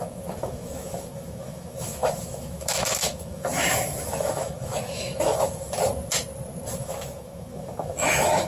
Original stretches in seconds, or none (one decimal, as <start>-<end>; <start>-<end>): 5.9-6.8